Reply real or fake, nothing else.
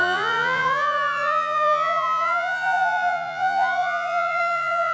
fake